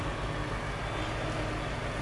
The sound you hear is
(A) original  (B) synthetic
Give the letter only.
A